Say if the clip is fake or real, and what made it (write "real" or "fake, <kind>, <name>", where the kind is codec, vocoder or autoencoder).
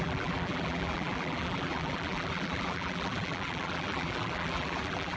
fake, vocoder, BigVGAN v2